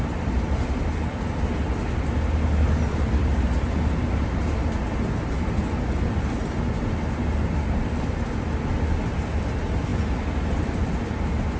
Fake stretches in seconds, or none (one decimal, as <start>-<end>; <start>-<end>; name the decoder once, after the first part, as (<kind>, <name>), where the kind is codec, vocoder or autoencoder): none